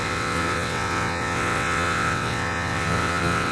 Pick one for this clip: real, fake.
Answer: fake